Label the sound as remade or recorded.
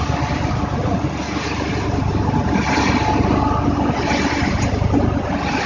recorded